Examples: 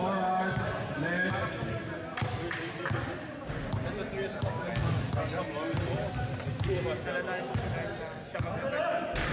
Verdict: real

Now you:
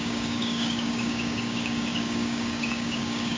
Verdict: fake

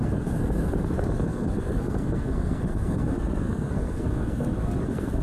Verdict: fake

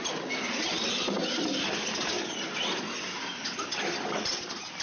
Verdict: real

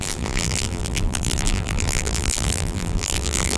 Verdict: fake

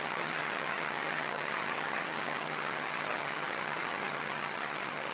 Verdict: fake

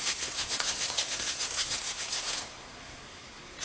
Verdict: fake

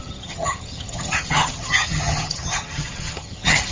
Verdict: fake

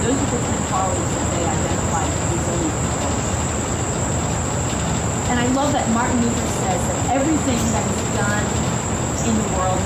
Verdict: real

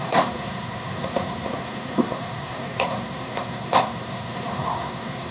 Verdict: fake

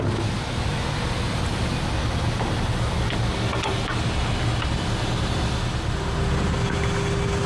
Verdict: real